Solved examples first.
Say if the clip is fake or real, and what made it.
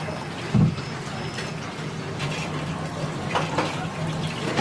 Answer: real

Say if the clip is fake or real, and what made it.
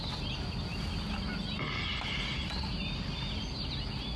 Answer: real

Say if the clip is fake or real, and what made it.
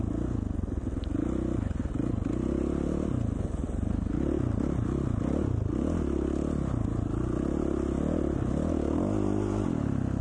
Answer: real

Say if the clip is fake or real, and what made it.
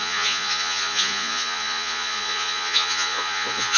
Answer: fake, vocoder, Vocos